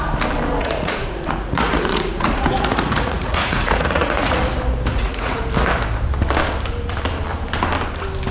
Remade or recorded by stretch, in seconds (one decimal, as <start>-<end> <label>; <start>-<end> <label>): 0.0-0.6 recorded; 0.6-4.4 remade; 4.4-4.9 recorded; 4.9-5.4 remade; 5.4-8.3 recorded